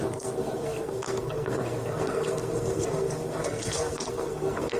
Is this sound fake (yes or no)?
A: yes